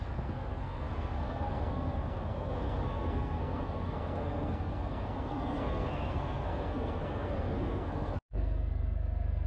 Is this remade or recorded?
remade